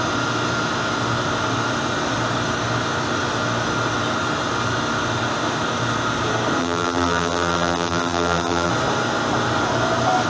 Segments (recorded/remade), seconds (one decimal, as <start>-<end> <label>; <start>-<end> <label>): 0.0-6.6 recorded; 6.6-8.7 remade; 8.7-10.3 recorded